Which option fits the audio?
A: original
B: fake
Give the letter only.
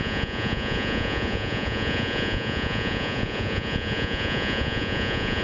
B